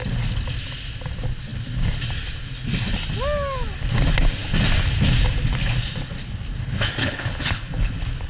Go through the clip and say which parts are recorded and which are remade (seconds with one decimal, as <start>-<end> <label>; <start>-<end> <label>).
0.0-7.0 recorded; 7.0-7.9 remade; 7.9-8.3 recorded